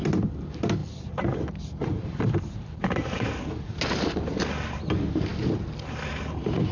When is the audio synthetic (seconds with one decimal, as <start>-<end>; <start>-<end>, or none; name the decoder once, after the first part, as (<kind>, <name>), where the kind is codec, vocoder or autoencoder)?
0.8-4.8 (vocoder, BigVGAN v2)